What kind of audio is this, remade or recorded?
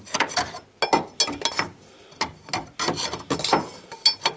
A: recorded